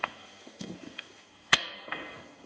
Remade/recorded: remade